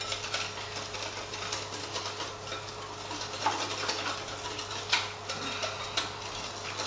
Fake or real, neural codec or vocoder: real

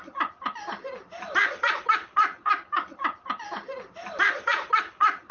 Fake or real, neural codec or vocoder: real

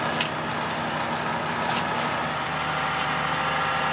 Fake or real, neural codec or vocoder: real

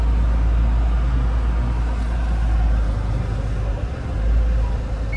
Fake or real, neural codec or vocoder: real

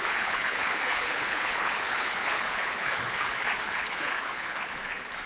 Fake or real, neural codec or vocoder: fake, codec, HILCodec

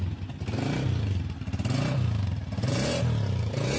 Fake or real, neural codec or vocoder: real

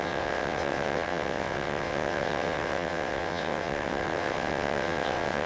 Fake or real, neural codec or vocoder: fake, vocoder, WaveNeXt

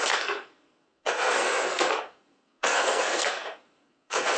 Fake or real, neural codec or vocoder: fake, codec, SNAC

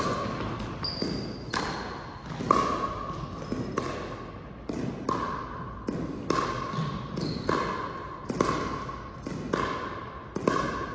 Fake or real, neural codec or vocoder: real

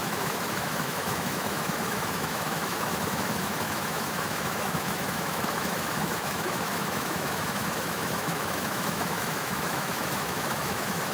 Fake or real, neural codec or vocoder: fake, autoencoder, DAC-VAE